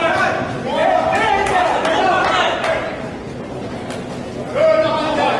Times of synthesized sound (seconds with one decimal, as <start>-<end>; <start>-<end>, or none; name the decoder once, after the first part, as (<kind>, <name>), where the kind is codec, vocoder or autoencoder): none